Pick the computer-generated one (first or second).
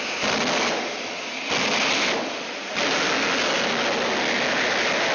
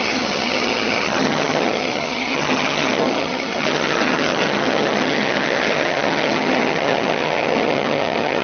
second